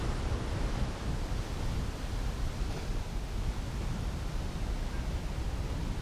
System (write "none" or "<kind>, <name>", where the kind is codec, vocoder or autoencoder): none